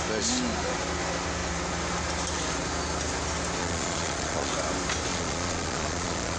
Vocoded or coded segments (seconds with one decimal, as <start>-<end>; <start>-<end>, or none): 3.6-4.5; 5.1-6.4